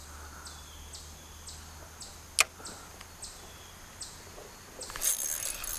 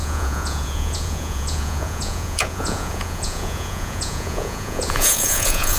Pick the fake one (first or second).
second